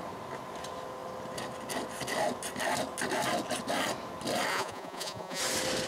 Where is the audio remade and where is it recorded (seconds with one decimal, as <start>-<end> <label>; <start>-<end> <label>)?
0.0-4.5 recorded; 4.5-5.4 remade; 5.4-5.9 recorded